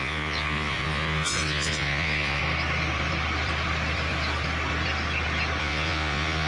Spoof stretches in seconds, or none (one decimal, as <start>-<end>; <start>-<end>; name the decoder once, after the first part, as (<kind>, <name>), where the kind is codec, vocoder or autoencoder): 0.0-2.4 (vocoder, Vocos); 5.6-6.5